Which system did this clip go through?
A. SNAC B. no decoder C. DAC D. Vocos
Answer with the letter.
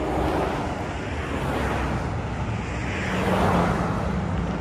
B